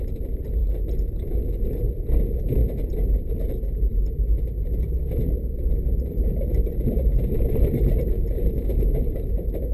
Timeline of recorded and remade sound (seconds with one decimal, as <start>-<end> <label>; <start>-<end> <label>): 0.0-0.6 remade; 0.6-1.6 recorded; 1.6-2.6 remade; 2.6-3.3 recorded; 3.3-9.7 remade